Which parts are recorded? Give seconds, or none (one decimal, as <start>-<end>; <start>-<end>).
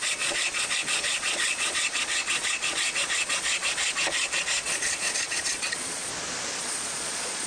6.1-6.6